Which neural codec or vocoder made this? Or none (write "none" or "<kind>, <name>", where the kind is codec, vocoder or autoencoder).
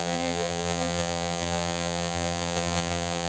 vocoder, BigVGAN v2